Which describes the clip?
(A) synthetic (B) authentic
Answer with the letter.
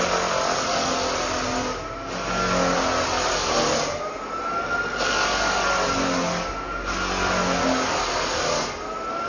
B